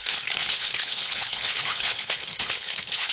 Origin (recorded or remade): remade